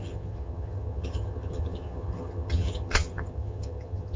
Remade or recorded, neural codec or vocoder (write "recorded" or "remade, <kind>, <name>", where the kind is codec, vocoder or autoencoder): remade, vocoder, HiFi-GAN